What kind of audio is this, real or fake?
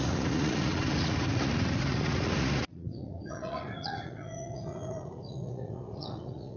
fake